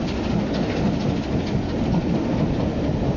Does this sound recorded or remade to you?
recorded